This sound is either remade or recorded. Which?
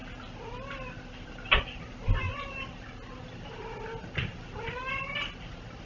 recorded